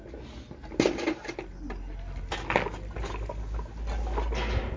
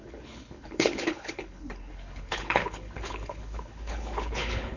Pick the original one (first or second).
first